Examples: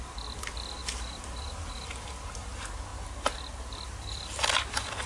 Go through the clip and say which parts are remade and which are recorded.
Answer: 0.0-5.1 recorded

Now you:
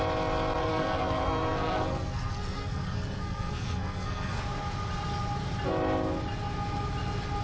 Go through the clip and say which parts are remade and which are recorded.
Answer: 0.0-0.6 recorded; 0.6-4.4 remade; 4.4-7.4 recorded

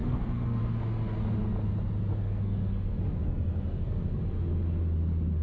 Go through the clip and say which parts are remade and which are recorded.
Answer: 0.0-0.6 remade; 0.6-2.1 recorded; 2.1-4.2 remade; 4.2-5.4 recorded

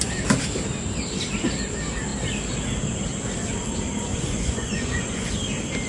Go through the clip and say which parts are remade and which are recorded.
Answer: 0.0-4.1 recorded; 4.1-5.3 remade; 5.3-5.9 recorded

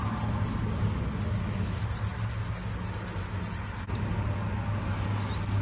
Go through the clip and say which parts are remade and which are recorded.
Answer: 0.0-5.6 recorded